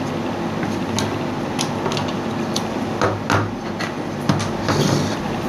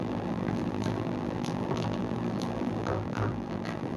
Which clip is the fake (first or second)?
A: second